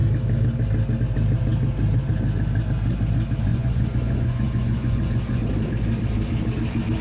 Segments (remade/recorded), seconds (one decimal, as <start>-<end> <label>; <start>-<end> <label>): 0.0-3.5 recorded; 3.5-5.4 remade; 5.4-7.0 recorded